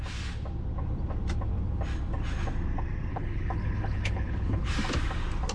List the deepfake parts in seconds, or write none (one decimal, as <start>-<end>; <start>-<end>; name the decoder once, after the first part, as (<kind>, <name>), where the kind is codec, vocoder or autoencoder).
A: 3.1-4.7 (codec, HILCodec)